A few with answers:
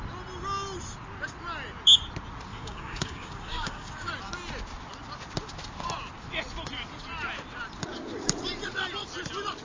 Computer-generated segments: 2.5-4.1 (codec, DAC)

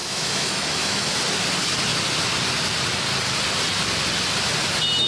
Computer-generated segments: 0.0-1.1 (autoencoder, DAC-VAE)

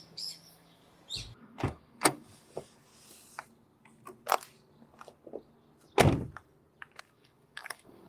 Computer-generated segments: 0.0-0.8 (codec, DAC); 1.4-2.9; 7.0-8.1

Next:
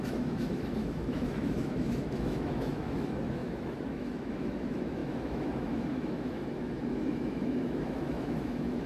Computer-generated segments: 0.0-8.9 (autoencoder, DAC-VAE)

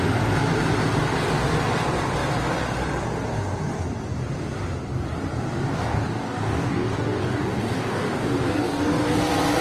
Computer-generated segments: 5.7-9.2 (codec, DAC)